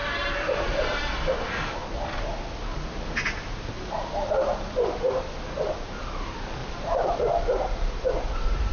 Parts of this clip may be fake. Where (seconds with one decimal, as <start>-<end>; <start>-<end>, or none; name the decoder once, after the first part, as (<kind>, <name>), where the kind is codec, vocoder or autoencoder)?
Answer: 0.0-1.0 (vocoder, BigVGAN v2); 6.6-7.2

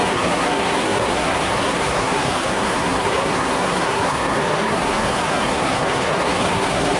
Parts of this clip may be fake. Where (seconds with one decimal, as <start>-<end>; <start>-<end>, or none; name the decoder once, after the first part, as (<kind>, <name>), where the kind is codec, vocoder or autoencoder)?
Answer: 0.0-7.0 (codec, SNAC)

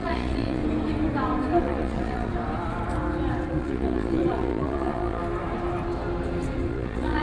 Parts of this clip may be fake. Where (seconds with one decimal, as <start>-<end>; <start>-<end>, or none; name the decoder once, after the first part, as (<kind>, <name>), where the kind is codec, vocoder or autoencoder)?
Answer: 0.0-0.6 (vocoder, Vocos); 1.6-2.3; 3.5-5.2; 6.7-7.2

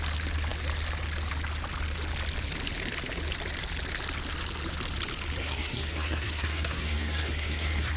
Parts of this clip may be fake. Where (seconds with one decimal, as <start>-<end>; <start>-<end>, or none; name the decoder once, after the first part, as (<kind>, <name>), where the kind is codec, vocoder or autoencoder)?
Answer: 5.4-8.0 (codec, SNAC)

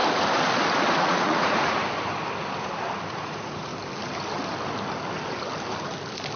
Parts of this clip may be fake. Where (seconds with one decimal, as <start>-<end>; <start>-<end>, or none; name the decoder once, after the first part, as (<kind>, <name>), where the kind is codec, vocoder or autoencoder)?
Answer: 0.9-1.8 (vocoder, Vocos); 3.1-3.7

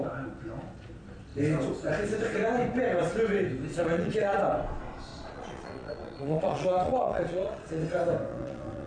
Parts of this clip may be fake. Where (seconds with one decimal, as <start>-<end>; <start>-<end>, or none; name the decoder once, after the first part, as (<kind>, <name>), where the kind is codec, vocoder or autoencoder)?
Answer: 3.7-4.4 (vocoder, Vocos); 5.1-7.8; 8.3-8.9